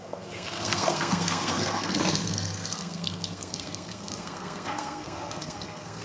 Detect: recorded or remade remade